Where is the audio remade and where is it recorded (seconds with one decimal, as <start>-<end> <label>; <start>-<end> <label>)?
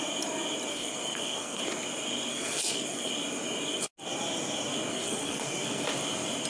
0.0-0.7 recorded; 0.7-1.6 remade; 1.6-2.3 recorded; 2.3-3.1 remade; 3.1-4.9 recorded; 4.9-5.9 remade; 5.9-6.5 recorded